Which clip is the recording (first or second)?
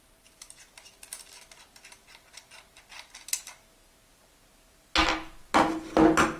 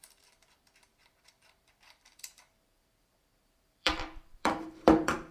first